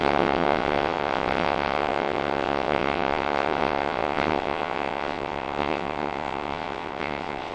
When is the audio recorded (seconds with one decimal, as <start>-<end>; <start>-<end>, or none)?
none

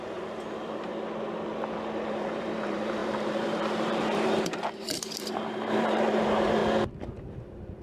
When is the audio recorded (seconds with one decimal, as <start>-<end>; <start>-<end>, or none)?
0.9-2.1; 6.6-7.1

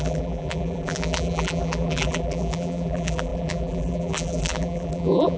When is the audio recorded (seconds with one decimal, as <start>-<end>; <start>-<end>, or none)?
none

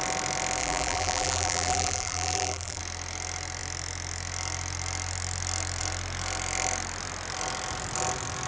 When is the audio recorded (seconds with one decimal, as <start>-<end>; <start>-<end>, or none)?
0.0-0.6; 2.8-8.5

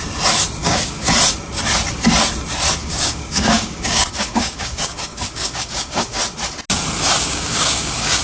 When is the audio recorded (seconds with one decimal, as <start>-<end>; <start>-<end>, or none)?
0.0-0.6; 1.1-2.8; 6.2-7.2

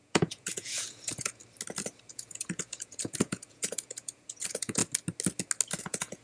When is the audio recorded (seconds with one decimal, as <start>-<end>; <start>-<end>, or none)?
1.4-2.1; 4.8-5.8

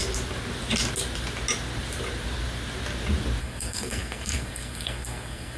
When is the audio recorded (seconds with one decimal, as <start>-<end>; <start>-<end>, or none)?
0.0-3.4

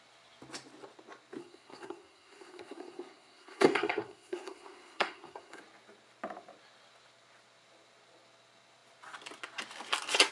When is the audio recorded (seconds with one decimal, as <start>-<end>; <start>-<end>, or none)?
0.0-1.4; 5.6-10.3